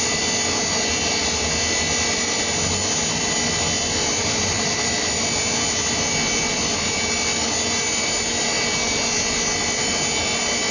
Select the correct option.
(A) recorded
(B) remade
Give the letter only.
A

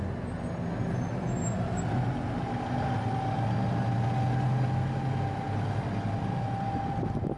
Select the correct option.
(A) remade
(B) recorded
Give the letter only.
B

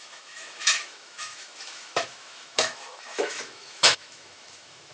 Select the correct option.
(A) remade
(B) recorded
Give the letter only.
A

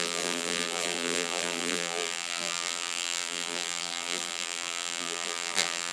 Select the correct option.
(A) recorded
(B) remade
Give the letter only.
B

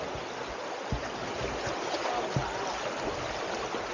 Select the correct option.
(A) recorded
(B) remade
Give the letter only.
A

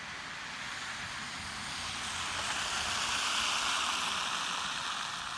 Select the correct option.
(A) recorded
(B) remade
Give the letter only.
A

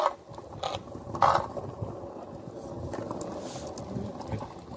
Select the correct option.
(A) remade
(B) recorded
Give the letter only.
B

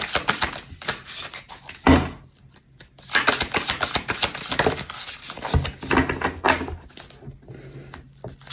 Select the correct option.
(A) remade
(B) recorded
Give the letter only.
B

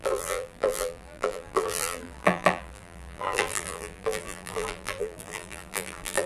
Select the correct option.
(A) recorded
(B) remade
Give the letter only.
B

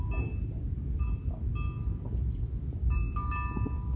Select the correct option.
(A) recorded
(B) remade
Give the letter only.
A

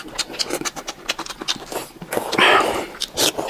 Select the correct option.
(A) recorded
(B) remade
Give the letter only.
A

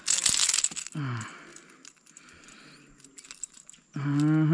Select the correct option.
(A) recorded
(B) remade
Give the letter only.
A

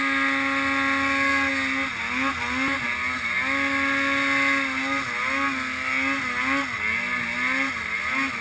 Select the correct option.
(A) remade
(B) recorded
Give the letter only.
B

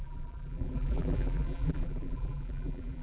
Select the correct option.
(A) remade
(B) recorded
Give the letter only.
A